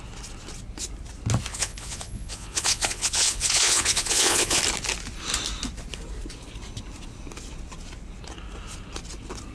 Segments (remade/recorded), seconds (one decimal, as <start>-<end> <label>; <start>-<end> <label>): 0.0-1.5 recorded; 1.5-4.6 remade; 4.6-9.5 recorded